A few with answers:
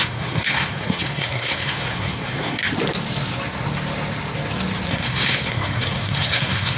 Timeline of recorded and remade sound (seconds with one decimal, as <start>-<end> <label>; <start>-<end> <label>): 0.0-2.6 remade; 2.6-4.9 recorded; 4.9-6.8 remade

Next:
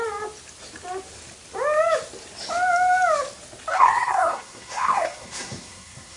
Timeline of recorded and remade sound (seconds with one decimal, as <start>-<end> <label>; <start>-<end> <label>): 0.0-3.7 recorded; 3.7-6.2 remade

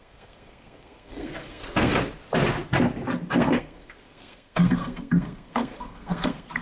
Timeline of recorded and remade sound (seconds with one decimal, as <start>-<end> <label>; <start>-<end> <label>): 0.0-1.9 remade; 1.9-3.3 recorded; 3.3-6.6 remade

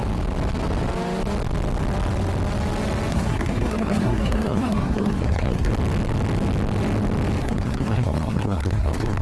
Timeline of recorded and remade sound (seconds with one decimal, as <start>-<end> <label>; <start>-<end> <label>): 0.0-3.1 recorded; 3.1-5.7 remade; 5.7-7.4 recorded; 7.4-9.2 remade

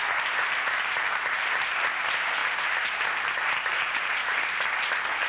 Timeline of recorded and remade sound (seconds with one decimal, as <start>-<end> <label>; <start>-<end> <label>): 0.0-5.3 recorded